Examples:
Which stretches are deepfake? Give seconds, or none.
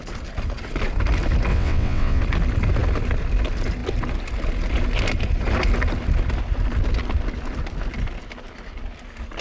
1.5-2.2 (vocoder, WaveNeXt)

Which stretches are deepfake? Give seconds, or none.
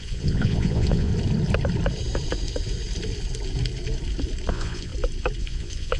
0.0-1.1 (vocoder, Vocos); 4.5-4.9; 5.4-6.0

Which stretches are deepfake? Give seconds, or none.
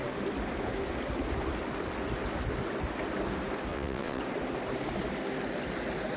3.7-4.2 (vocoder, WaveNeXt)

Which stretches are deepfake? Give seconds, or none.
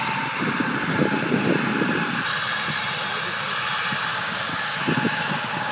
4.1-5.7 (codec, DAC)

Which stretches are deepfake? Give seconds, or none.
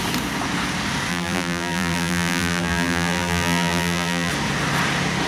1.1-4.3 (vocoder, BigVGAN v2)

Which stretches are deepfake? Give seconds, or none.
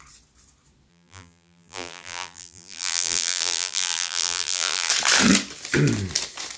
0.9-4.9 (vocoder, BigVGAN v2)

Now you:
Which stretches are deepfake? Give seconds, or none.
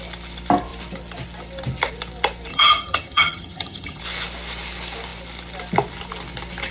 2.5-4.0 (vocoder, HiFi-GAN)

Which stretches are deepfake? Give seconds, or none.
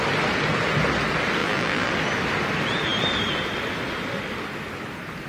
1.4-1.9 (vocoder, BigVGAN v2)